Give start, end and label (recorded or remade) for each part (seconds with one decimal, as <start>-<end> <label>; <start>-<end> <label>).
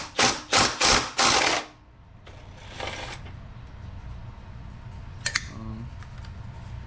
0.0-6.9 recorded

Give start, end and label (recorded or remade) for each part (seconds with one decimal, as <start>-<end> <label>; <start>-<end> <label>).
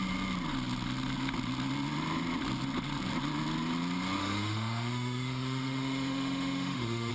0.0-4.2 recorded; 4.2-7.1 remade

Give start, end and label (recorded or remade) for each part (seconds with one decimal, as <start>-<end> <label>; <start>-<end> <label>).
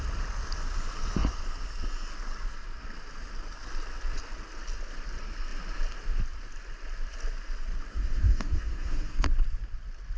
0.0-7.9 recorded; 7.9-9.3 remade; 9.3-10.2 recorded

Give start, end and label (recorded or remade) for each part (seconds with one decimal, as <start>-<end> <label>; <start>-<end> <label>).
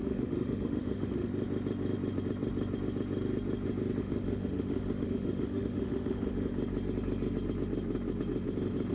0.0-1.3 remade; 1.3-4.0 recorded; 4.0-6.5 remade; 6.5-8.9 recorded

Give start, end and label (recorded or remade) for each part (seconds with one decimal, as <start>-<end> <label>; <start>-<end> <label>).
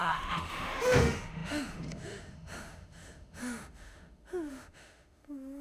0.0-5.6 remade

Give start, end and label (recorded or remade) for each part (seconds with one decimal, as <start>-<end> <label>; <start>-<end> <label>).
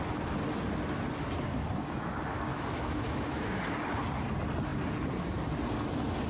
0.0-2.5 recorded; 2.5-3.6 remade; 3.6-6.3 recorded